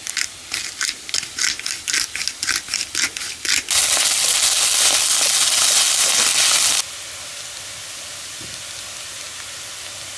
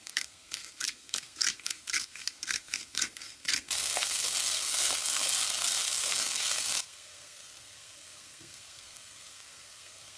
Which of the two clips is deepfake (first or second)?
second